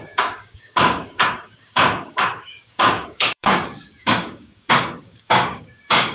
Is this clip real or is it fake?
fake